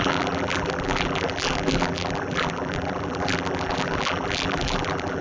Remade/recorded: remade